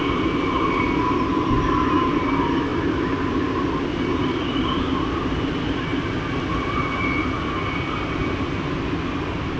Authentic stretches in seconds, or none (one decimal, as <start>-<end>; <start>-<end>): 0.0-9.6